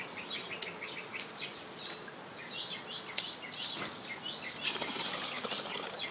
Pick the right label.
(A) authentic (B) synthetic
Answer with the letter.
A